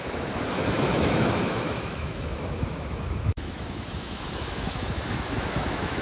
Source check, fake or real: fake